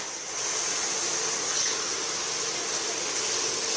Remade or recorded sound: recorded